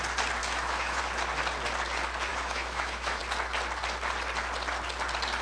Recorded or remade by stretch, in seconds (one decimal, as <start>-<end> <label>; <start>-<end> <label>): 0.0-0.4 recorded; 0.4-1.0 remade; 1.0-2.3 recorded; 2.3-3.2 remade; 3.2-5.4 recorded